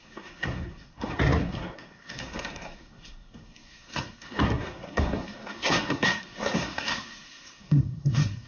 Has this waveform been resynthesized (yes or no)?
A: yes